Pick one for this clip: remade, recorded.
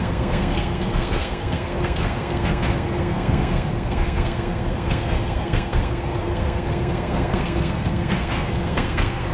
remade